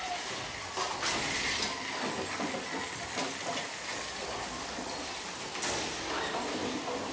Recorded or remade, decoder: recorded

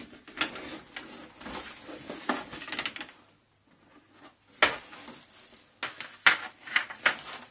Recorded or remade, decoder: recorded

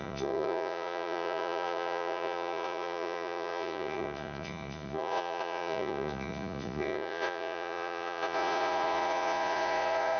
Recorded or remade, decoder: remade, vocoder, Vocos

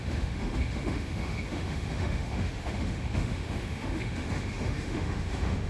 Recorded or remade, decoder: remade, autoencoder, DAC-VAE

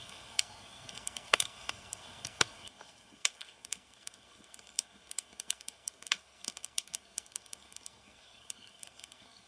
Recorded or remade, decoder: remade, codec, SNAC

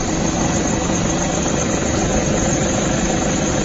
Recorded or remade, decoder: recorded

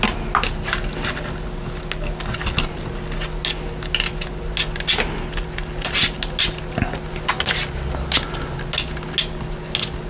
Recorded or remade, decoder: recorded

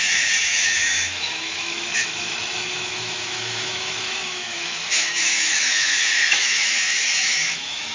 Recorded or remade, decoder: remade, autoencoder, DAC-VAE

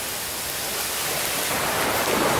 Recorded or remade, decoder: recorded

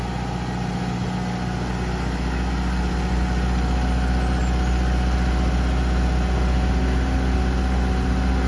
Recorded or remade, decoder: recorded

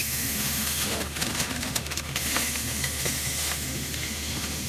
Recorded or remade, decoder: remade, autoencoder, DAC-VAE